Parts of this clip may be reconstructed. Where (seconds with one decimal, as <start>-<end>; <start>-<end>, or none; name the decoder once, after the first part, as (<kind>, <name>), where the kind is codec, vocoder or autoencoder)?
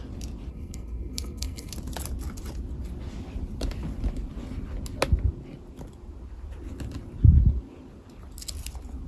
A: 0.5-1.7 (codec, SNAC)